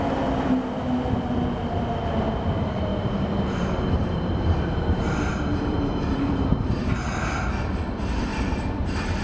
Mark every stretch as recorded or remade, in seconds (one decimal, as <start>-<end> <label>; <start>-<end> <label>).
0.0-2.9 recorded; 2.9-6.9 remade; 6.9-8.3 recorded; 8.3-9.2 remade